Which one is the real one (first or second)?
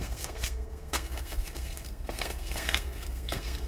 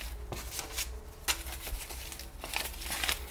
second